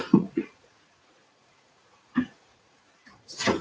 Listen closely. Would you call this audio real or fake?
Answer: fake